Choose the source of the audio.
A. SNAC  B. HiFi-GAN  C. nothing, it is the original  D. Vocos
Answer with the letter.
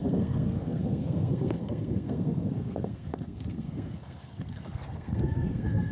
A